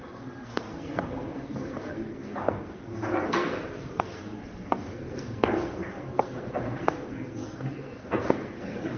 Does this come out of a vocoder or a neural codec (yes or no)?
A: yes